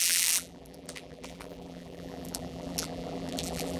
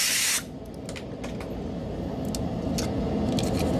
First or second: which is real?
second